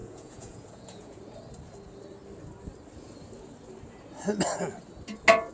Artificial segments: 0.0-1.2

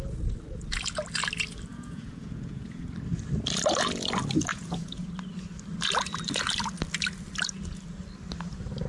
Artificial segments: 1.7-2.9; 4.5-5.1

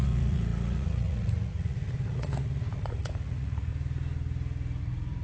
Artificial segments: 0.0-3.7; 4.8-5.2

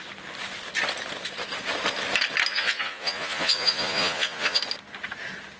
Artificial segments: 2.5-4.6

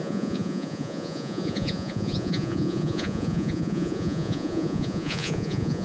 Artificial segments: 0.0-5.8

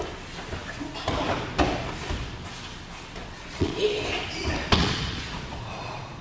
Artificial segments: 3.2-3.8; 4.8-6.2